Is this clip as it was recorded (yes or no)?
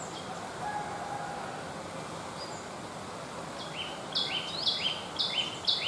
yes